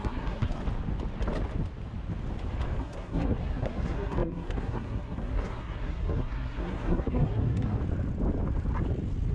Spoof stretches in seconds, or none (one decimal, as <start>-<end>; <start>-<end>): 0.0-0.6; 2.8-7.8